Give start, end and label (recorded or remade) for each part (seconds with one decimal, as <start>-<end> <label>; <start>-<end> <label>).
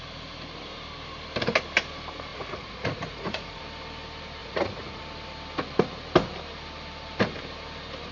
0.0-2.3 recorded; 2.3-3.6 remade; 3.6-4.4 recorded; 4.4-5.0 remade; 5.0-8.1 recorded